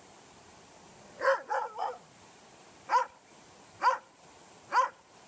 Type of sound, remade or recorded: recorded